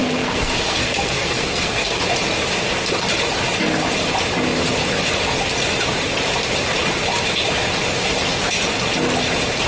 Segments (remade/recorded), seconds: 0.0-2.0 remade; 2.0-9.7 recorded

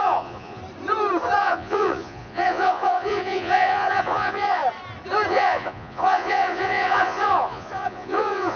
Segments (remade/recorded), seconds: 0.0-0.6 remade; 0.6-1.4 recorded; 1.4-4.6 remade; 4.6-5.3 recorded; 5.3-8.6 remade

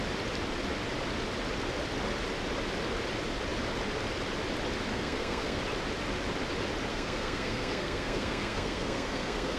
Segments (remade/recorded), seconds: 0.0-4.9 recorded; 4.9-5.6 remade; 5.6-6.9 recorded; 6.9-9.6 remade

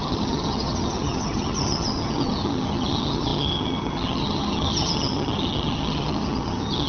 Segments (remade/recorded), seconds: 0.0-6.9 remade